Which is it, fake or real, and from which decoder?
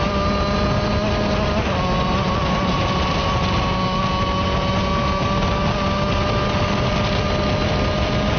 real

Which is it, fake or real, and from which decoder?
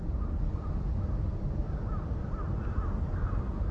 real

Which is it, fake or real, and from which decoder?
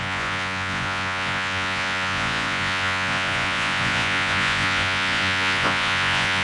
fake, vocoder, Vocos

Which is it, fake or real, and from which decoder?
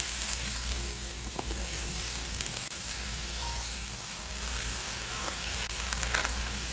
fake, codec, DAC